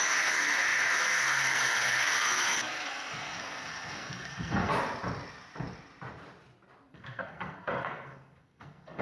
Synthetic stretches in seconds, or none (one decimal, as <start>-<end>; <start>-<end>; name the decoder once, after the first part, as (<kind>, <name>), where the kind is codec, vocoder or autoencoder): 0.0-4.7 (codec, SNAC); 6.9-9.0